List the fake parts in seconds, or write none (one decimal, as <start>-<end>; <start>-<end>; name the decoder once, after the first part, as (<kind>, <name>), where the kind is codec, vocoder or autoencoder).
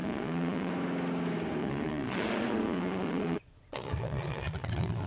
0.0-0.7 (vocoder, Vocos); 1.6-5.1